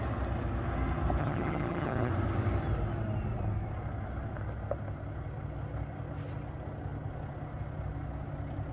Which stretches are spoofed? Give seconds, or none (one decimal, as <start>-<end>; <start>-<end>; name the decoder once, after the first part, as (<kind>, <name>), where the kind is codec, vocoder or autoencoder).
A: 1.2-2.1 (vocoder, HiFi-GAN)